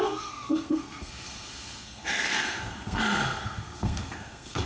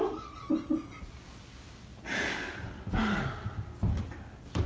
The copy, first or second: first